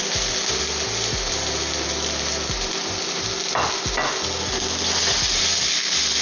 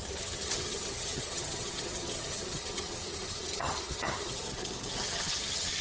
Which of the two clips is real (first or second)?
first